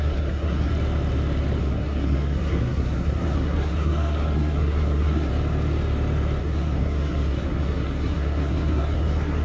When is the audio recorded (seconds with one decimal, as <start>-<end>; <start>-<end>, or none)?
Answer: 0.7-1.6; 5.3-6.4